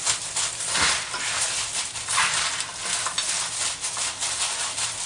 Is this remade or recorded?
recorded